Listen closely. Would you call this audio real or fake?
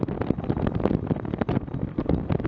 real